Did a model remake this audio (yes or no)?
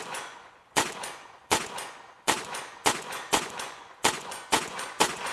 yes